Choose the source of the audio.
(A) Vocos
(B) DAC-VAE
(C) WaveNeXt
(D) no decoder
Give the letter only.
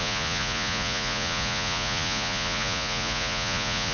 A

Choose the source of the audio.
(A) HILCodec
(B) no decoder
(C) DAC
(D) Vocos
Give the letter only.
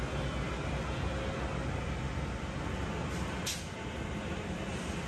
B